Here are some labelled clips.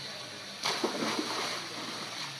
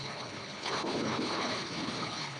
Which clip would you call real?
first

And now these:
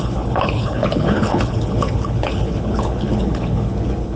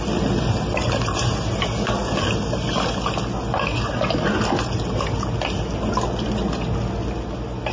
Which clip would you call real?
second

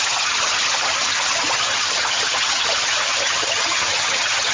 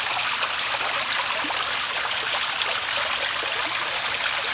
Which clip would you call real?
second